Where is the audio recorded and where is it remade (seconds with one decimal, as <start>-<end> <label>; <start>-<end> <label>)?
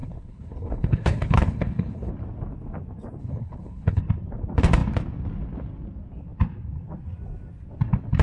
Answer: 0.0-2.1 remade; 2.1-3.2 recorded; 3.2-4.0 remade; 4.0-8.2 recorded